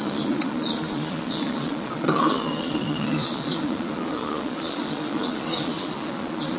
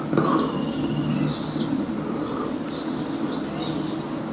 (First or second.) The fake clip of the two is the first